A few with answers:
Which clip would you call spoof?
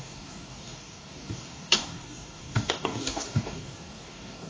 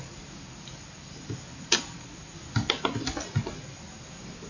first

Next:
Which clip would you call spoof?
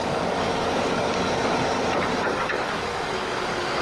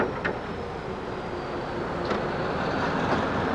first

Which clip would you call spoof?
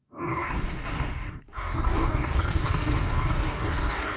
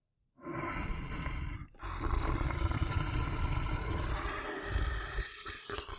first